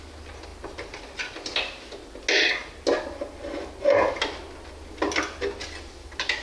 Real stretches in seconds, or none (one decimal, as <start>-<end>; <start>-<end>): 0.0-6.4